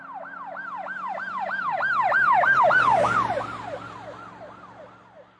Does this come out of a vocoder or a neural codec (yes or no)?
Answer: no